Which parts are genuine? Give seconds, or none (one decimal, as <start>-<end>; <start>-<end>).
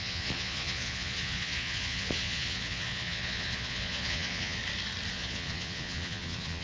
4.6-5.1